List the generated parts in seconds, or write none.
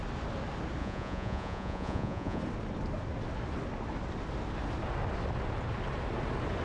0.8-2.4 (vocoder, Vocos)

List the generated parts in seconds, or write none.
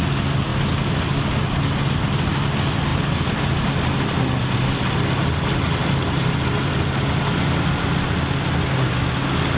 6.0-7.0 (vocoder, BigVGAN v2)